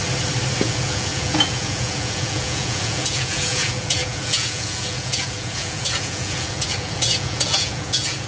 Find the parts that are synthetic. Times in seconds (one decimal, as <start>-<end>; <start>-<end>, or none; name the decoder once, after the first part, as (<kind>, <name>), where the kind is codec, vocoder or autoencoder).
0.6-8.3 (vocoder, Vocos)